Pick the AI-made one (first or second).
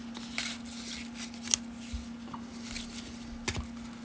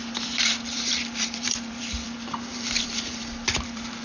second